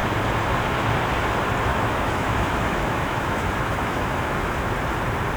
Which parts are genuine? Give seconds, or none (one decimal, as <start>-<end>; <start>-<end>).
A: 0.0-1.7; 4.7-5.4